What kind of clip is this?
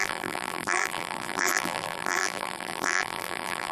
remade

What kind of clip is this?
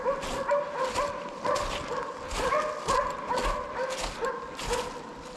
recorded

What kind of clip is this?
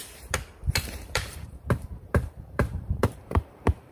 remade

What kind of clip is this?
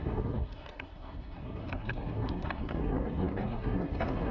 remade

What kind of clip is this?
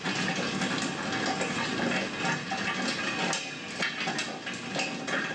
recorded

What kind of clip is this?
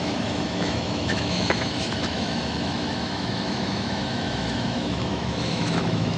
remade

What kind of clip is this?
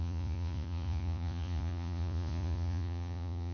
remade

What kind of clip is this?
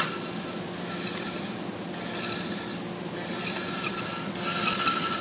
recorded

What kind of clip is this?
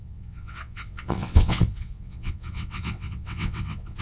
remade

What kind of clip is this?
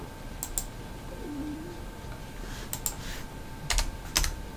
recorded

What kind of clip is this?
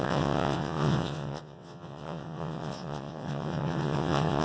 remade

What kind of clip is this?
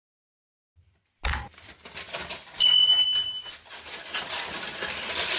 recorded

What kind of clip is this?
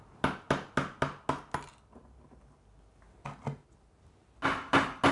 recorded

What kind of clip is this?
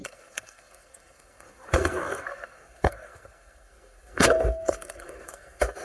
remade